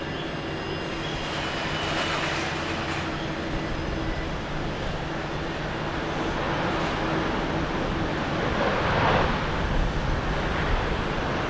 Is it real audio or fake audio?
real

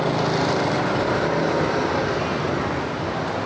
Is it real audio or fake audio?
real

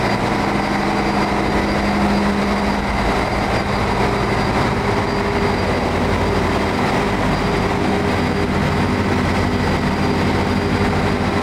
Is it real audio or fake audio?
real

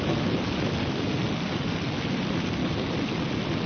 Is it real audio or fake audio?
real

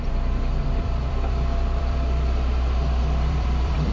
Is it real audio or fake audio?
fake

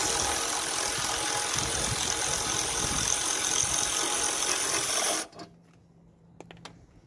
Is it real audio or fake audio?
real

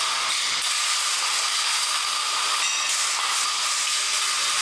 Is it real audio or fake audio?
real